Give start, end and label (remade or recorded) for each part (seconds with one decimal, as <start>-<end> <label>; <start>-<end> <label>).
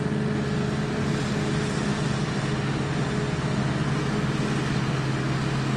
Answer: 0.0-5.8 recorded